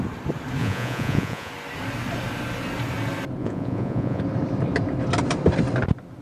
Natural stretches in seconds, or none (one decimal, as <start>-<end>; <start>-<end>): 0.0-0.6; 1.5-3.4; 4.2-6.2